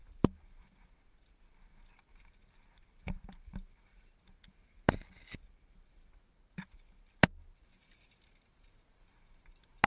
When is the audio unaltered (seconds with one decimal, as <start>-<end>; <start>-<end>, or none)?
0.0-9.9